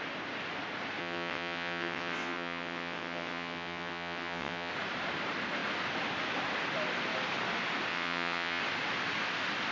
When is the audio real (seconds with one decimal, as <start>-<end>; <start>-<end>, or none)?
0.0-1.0; 4.7-7.9; 8.6-9.7

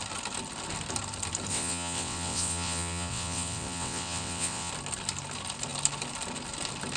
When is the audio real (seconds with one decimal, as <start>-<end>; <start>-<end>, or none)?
0.0-1.5; 4.7-7.0

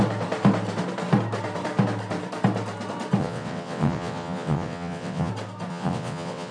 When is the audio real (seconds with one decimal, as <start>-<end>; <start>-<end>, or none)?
0.0-3.2; 5.3-5.7

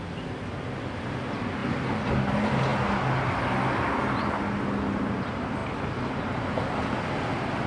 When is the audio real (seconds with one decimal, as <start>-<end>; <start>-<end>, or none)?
0.0-7.7

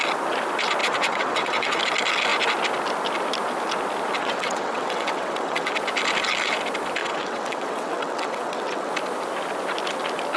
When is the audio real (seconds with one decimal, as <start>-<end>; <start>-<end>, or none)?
0.0-0.8; 1.8-4.2; 5.8-7.0; 8.9-10.4

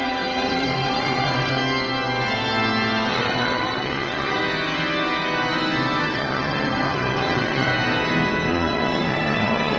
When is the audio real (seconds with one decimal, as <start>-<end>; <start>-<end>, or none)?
1.6-3.1; 4.4-6.1; 7.7-8.5